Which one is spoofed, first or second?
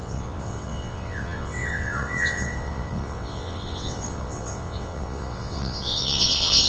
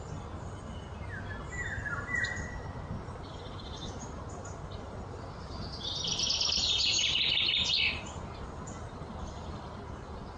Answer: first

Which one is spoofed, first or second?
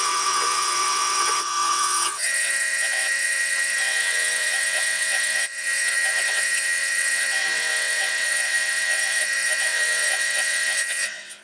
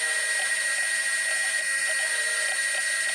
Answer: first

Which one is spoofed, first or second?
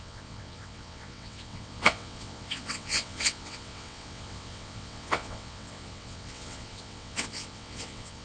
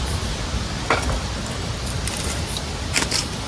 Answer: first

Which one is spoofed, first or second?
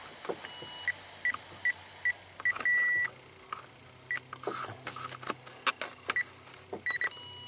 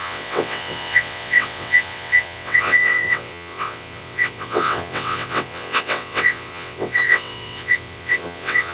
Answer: second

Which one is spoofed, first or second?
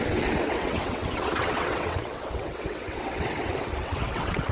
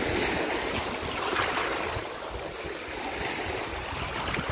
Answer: first